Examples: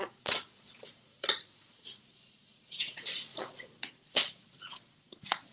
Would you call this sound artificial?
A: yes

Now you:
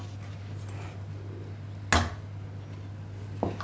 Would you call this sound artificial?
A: no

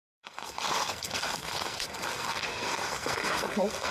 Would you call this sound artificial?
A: yes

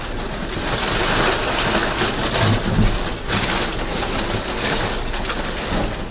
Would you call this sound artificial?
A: no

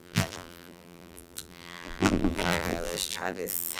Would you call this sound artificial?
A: yes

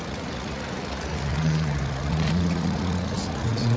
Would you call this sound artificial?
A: yes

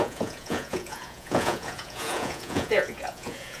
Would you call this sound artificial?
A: yes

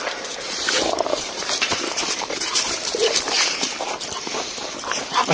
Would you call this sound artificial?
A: yes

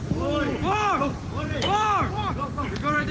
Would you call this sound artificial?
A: yes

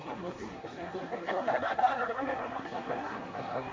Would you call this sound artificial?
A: yes